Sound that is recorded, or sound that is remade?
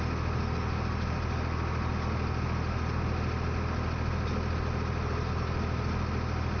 recorded